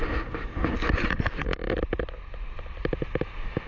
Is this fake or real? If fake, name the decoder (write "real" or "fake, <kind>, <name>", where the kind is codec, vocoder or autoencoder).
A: real